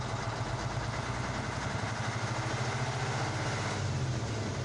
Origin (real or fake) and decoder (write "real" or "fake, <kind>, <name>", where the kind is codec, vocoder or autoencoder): real